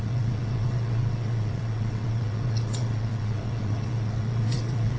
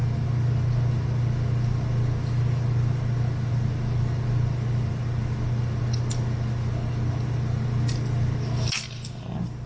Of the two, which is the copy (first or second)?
first